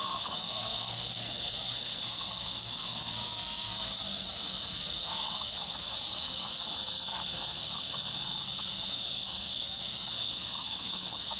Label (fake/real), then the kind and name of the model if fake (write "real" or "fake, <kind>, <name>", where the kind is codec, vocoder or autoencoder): fake, codec, SNAC